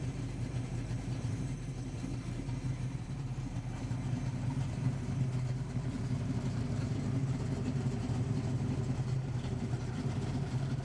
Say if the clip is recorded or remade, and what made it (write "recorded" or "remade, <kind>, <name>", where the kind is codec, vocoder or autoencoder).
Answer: remade, vocoder, BigVGAN v2